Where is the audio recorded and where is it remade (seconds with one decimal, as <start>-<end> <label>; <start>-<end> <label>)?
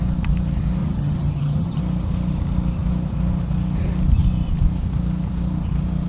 0.0-0.8 recorded; 0.8-1.8 remade; 1.8-6.1 recorded